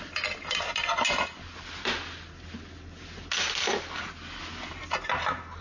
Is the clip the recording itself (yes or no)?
yes